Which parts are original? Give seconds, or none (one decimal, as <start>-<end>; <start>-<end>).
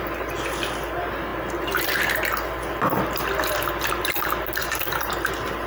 0.0-4.6; 5.1-5.7